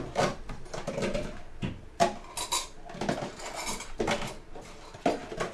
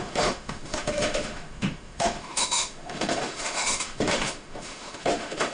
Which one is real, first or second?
first